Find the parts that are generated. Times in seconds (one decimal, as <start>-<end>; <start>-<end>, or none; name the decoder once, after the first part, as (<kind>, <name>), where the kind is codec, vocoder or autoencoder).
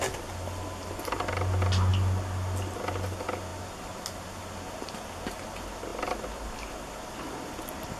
none